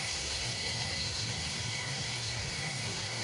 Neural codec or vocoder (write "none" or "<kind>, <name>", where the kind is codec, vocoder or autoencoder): codec, SNAC